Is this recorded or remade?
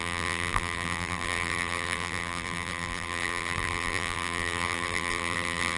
remade